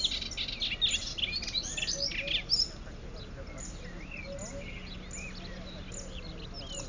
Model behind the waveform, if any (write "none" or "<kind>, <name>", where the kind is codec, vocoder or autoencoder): none